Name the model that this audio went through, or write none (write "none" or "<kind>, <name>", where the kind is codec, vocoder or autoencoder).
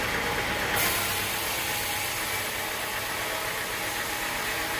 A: none